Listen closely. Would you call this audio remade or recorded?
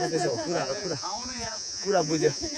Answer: remade